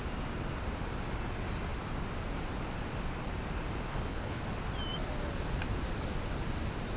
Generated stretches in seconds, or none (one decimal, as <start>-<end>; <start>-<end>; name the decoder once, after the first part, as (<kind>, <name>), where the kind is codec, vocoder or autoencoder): 3.9-4.4 (codec, HILCodec)